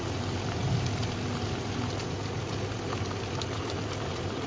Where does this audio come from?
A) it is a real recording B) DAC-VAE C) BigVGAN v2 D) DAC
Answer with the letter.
A